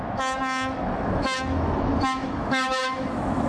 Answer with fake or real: fake